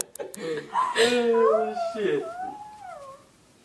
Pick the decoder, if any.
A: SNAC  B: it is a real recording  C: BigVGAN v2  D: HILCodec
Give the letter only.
B